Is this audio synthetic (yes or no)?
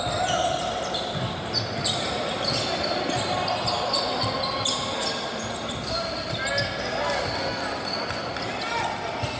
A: no